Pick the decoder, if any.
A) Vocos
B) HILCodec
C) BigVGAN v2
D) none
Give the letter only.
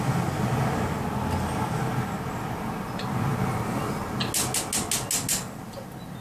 D